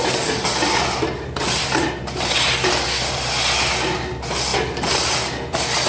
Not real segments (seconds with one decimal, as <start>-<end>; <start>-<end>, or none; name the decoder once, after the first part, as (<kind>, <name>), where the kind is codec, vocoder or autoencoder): none